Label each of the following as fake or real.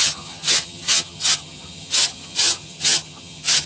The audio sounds fake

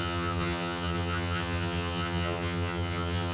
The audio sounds fake